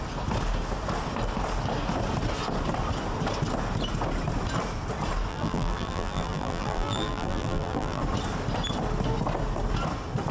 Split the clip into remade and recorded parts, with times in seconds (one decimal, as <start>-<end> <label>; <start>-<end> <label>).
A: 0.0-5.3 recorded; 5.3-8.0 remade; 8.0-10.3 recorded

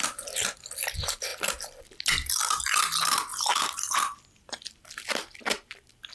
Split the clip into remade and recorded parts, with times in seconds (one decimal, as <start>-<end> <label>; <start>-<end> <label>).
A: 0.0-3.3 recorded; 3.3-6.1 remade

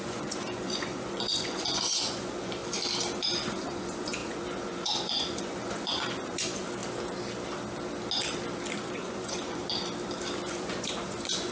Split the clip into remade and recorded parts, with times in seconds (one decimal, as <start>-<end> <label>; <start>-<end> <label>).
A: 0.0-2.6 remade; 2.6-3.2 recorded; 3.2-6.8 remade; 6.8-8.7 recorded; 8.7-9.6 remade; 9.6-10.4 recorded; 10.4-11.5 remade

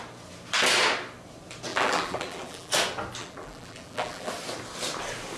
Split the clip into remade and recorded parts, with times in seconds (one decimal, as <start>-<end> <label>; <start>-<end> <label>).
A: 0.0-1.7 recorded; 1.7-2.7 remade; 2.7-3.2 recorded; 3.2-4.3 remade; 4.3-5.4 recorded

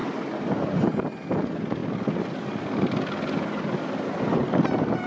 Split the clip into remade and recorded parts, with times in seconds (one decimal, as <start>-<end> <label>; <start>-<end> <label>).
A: 0.0-5.1 recorded

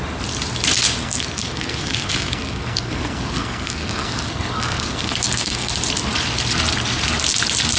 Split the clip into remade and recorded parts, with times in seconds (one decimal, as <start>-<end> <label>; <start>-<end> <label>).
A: 0.0-1.0 recorded; 1.0-5.7 remade; 5.7-7.8 recorded

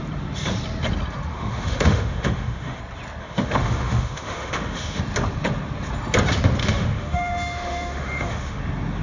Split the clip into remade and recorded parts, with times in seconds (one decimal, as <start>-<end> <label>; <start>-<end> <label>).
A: 0.0-1.3 recorded; 1.3-2.8 remade; 2.8-3.2 recorded; 3.2-5.0 remade; 5.0-6.6 recorded; 6.6-8.6 remade; 8.6-9.0 recorded

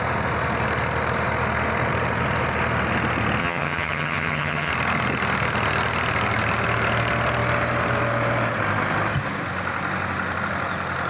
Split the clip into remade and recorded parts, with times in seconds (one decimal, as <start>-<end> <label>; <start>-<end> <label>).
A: 0.0-3.4 recorded; 3.4-4.7 remade; 4.7-11.1 recorded